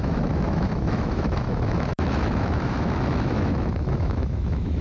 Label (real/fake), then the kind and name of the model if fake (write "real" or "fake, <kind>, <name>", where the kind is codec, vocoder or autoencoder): fake, autoencoder, DAC-VAE